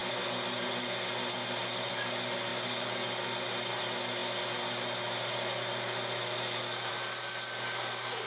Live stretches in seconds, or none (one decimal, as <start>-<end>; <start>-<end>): 0.0-8.3